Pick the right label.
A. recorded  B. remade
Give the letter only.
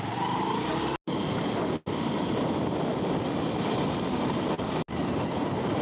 A